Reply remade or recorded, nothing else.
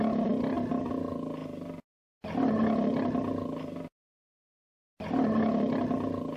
recorded